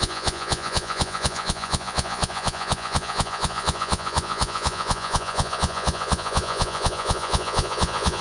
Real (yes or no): no